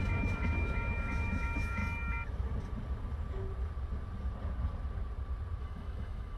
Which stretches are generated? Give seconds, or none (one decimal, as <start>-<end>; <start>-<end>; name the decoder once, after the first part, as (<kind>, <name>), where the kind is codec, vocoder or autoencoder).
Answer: 0.0-1.8 (autoencoder, DAC-VAE); 5.6-6.4